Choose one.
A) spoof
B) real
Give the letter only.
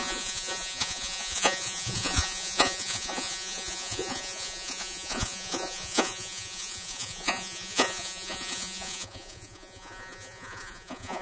A